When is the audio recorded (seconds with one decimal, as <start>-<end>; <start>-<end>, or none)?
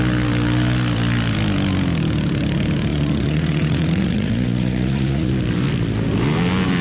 0.0-2.9; 5.3-6.8